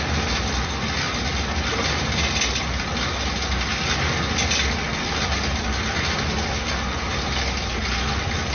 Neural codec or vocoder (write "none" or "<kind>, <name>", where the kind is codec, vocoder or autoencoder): none